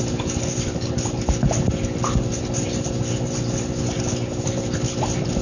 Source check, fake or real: real